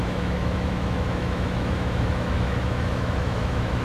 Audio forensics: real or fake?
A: fake